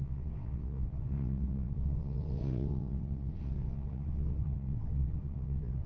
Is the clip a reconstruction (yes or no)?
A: yes